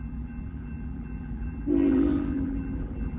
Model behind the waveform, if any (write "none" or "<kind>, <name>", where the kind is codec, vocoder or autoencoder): vocoder, BigVGAN v2